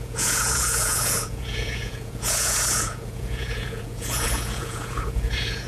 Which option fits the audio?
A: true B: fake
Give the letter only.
B